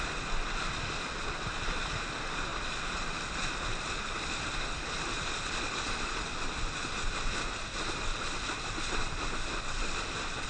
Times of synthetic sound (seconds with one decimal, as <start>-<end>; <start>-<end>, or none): none